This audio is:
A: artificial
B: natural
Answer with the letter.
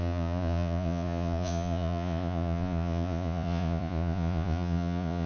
A